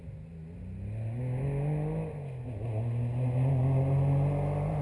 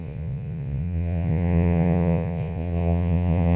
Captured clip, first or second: first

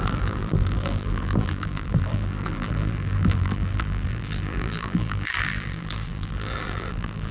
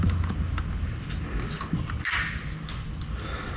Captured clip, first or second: second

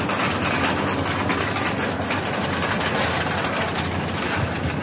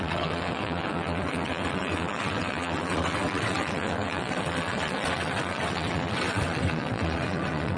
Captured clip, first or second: first